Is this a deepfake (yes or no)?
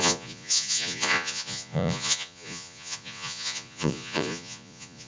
yes